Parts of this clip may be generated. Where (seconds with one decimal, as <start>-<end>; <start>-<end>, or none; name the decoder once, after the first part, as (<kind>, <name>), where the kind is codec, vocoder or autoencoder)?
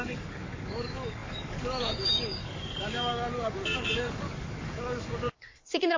0.0-6.0 (codec, DAC)